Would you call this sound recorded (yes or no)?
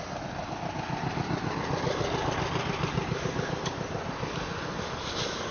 yes